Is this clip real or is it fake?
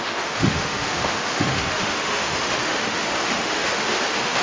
fake